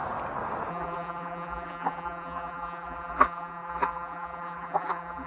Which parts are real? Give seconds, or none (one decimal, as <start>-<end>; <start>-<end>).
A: 0.0-0.7